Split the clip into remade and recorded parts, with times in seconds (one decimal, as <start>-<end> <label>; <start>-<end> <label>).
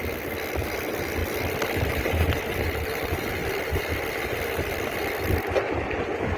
0.0-6.4 recorded